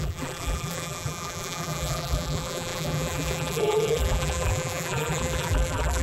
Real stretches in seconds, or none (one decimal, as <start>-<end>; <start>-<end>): none